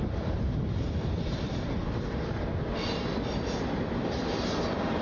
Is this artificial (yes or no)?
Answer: no